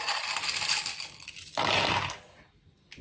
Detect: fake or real real